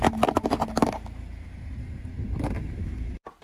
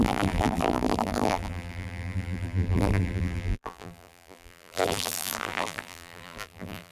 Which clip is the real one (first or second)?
first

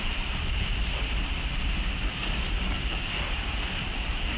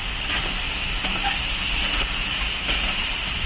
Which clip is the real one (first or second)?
second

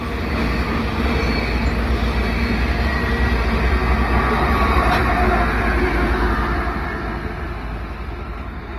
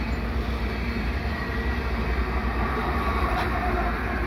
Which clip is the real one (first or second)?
first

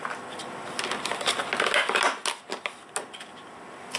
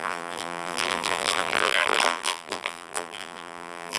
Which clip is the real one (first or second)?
first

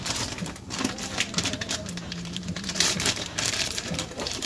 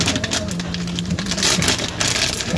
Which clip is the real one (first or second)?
second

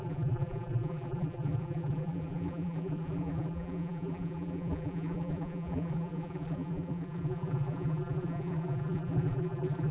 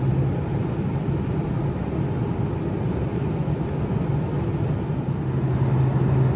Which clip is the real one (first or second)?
second